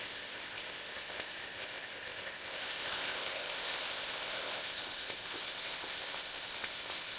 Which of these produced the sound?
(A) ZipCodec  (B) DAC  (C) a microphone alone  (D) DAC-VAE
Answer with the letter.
A